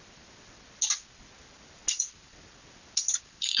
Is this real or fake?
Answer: real